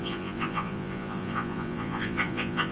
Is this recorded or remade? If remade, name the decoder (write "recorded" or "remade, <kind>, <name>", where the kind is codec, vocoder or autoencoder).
remade, vocoder, Vocos